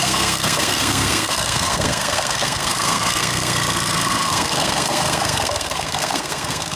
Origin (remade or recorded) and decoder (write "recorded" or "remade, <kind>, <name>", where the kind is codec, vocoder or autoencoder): remade, codec, SNAC